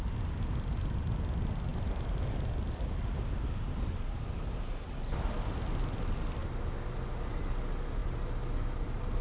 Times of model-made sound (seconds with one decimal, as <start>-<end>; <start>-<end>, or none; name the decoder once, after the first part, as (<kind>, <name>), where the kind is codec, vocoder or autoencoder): none